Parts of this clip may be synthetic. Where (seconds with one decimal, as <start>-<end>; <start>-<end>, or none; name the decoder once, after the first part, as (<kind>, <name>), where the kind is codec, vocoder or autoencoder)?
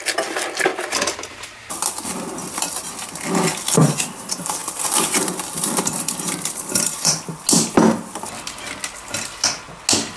2.4-2.9 (vocoder, BigVGAN v2); 4.6-7.2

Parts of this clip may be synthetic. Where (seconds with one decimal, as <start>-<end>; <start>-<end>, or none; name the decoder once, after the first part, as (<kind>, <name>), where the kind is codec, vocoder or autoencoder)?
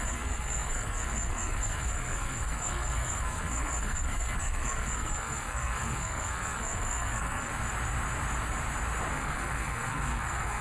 0.0-7.5 (codec, SNAC); 9.1-10.6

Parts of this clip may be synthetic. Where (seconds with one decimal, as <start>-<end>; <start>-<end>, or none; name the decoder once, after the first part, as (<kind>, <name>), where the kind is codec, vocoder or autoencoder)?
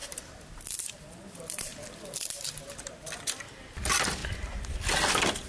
0.0-4.2 (vocoder, BigVGAN v2)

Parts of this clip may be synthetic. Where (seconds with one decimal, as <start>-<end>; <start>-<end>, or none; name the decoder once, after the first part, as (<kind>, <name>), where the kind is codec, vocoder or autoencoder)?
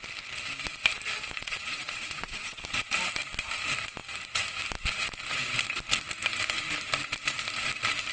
1.4-2.6 (vocoder, Vocos)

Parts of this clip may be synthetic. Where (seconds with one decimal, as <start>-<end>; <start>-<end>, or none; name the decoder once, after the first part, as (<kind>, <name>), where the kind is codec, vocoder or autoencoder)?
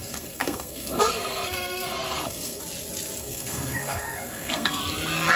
0.0-2.6 (codec, SNAC); 3.2-4.8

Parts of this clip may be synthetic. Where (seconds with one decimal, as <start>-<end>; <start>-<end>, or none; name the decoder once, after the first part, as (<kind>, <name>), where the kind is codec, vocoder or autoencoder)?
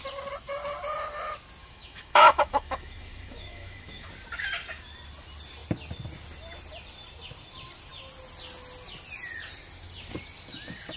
1.6-4.1 (autoencoder, DAC-VAE)